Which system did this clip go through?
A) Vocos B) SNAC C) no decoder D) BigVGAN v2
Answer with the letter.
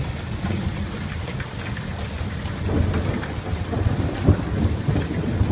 C